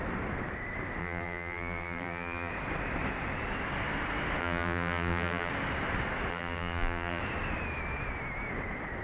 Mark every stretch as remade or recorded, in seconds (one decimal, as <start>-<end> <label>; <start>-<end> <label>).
0.0-1.0 recorded; 1.0-2.5 remade; 2.5-4.4 recorded; 4.4-5.5 remade; 5.5-6.3 recorded; 6.3-7.2 remade; 7.2-9.0 recorded